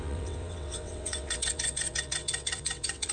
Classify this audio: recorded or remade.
remade